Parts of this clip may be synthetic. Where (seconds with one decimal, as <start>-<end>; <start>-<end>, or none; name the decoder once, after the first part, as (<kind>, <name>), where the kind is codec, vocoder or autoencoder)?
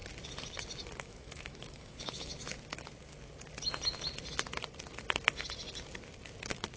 1.0-2.3 (autoencoder, DAC-VAE)